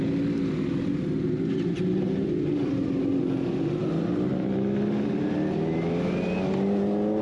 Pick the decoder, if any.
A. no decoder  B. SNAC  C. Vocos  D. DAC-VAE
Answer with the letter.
A